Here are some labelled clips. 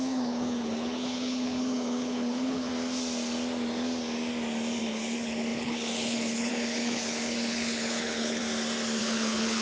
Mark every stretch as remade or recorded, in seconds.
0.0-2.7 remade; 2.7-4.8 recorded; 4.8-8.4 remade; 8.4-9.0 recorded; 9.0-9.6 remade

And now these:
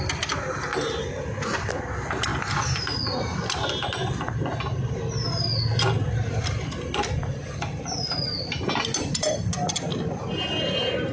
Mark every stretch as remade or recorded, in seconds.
0.0-11.1 recorded

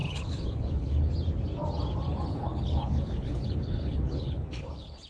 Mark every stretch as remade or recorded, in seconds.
0.0-1.1 remade; 1.1-2.3 recorded; 2.3-5.1 remade